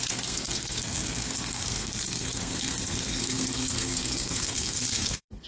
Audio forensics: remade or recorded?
remade